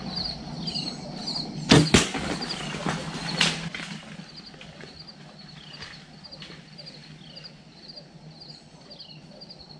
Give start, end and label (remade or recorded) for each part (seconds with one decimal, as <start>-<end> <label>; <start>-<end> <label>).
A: 0.0-9.8 recorded